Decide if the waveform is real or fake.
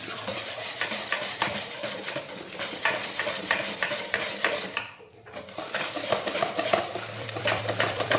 fake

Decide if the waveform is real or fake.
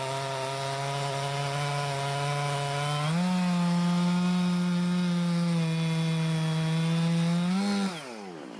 real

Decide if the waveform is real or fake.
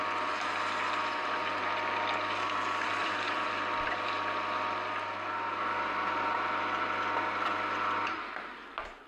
real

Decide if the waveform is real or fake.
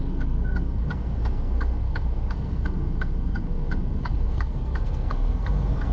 fake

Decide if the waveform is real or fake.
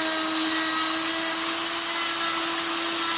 real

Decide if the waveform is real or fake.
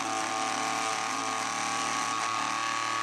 real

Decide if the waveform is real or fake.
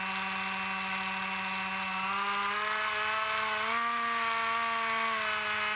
real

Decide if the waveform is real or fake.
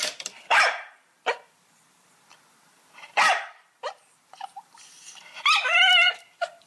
fake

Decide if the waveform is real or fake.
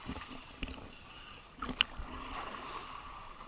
real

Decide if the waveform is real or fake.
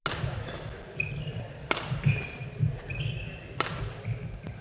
real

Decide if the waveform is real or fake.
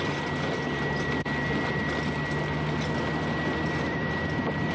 real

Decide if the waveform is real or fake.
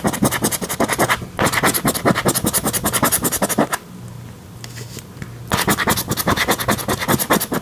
real